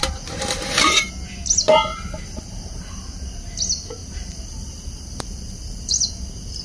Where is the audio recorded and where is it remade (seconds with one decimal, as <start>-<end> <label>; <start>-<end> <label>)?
0.0-1.1 remade; 1.1-1.9 recorded; 1.9-2.9 remade; 2.9-4.0 recorded; 4.0-6.1 remade; 6.1-6.6 recorded